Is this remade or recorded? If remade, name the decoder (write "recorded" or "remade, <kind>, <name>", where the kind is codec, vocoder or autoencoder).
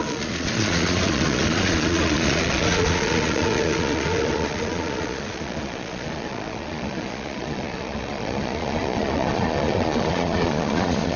remade, vocoder, Vocos